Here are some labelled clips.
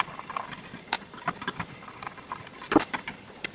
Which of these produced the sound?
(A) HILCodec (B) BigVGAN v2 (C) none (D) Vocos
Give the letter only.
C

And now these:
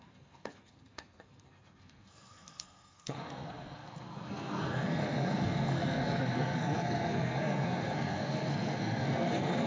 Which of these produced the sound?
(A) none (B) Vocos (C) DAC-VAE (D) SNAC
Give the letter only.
D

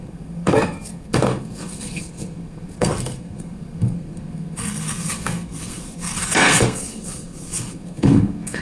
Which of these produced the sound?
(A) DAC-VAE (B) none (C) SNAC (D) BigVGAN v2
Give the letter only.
C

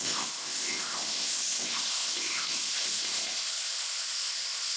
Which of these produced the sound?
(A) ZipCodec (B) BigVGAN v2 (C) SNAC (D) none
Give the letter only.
A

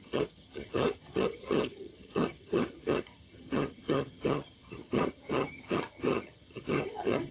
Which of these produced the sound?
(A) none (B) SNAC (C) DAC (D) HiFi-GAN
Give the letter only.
D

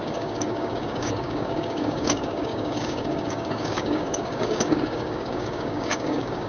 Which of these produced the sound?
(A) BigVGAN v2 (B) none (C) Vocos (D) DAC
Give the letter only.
D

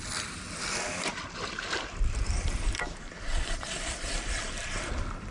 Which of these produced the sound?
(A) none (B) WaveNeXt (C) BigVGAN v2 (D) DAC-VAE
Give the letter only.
C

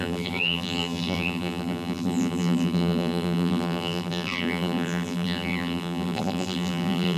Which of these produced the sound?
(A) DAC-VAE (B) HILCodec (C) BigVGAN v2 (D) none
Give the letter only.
C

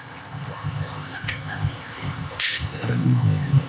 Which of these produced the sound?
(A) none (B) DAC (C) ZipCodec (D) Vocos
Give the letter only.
C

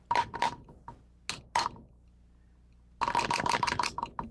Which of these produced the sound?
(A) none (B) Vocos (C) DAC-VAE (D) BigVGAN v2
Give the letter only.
A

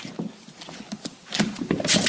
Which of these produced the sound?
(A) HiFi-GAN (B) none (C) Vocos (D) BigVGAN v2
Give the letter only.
B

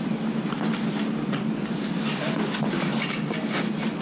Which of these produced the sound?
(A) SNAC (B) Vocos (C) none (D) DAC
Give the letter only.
C